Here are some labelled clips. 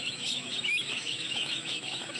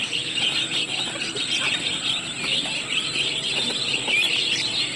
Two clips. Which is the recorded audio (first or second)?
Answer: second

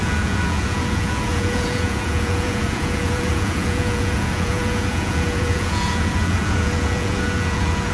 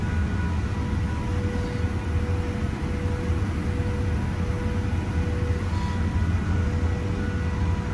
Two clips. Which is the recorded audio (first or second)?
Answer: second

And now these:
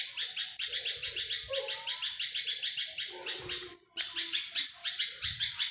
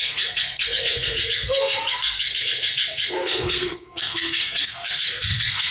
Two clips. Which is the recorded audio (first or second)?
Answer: first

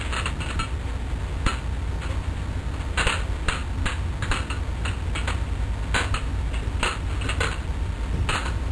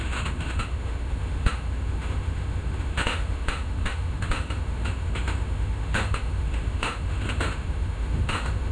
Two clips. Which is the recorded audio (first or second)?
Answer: first